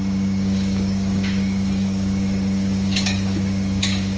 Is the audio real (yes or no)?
no